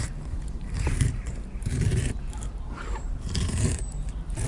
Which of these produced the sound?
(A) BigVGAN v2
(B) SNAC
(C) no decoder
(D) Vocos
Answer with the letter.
A